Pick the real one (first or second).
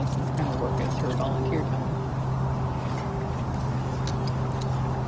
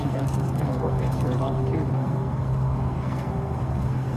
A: first